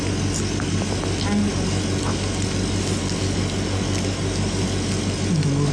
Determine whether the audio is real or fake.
real